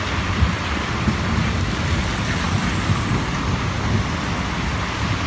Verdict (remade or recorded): recorded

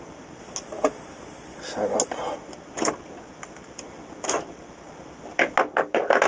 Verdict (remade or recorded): recorded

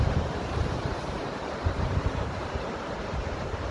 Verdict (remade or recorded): remade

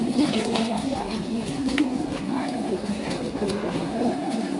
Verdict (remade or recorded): remade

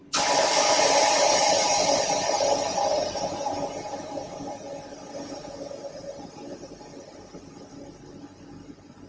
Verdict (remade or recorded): recorded